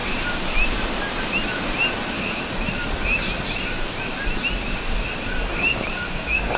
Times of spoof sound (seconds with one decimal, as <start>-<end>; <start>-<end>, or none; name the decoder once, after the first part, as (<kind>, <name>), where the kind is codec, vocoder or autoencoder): 5.7-6.6 (codec, DAC)